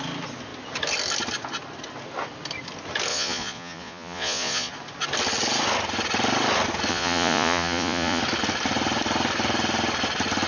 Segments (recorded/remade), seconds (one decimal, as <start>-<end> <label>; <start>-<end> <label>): 0.0-3.1 recorded; 3.1-4.7 remade; 4.7-6.9 recorded; 6.9-8.2 remade; 8.2-10.5 recorded